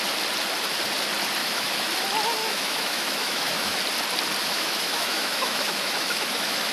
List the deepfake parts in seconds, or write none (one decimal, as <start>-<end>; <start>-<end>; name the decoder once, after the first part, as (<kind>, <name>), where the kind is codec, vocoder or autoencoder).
1.4-1.9 (autoencoder, DAC-VAE); 2.4-3.8; 4.4-6.7

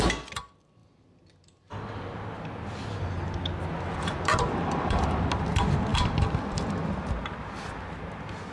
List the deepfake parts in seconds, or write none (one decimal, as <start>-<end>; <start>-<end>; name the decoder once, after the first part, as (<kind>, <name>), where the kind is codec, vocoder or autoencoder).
4.3-5.2 (vocoder, BigVGAN v2); 5.9-7.1

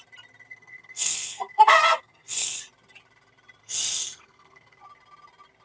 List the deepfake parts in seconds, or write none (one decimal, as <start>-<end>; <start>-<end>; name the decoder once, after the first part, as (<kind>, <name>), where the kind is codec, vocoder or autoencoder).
0.5-2.6 (codec, SNAC); 3.6-4.8

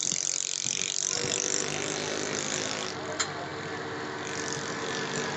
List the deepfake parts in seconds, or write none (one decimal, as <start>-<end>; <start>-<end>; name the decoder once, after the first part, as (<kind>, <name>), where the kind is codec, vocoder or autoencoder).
none

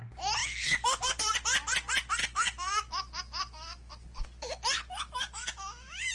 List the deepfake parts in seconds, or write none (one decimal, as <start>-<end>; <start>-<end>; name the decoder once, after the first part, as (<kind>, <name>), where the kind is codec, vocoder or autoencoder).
0.4-1.0 (autoencoder, DAC-VAE); 2.2-6.1

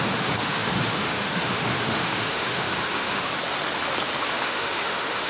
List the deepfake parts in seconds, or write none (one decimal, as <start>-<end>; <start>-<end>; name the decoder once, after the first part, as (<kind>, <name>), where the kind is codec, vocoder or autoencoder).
0.0-3.3 (autoencoder, DAC-VAE); 4.2-5.3

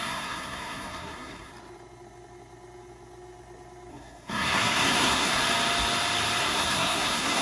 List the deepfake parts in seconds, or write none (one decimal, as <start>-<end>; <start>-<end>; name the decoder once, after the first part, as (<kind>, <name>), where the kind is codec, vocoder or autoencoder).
0.0-1.5 (codec, SNAC); 3.9-5.4; 6.4-7.4